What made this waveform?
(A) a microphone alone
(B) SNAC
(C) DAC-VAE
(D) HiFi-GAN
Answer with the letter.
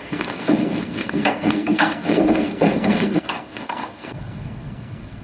B